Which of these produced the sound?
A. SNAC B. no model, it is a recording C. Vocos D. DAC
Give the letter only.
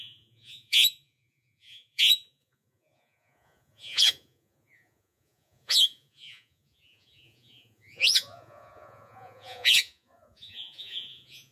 C